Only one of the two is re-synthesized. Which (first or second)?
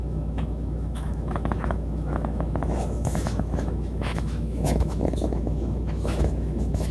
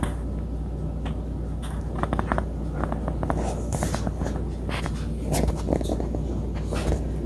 first